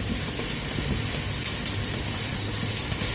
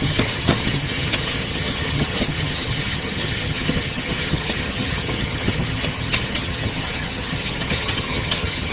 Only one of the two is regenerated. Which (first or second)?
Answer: second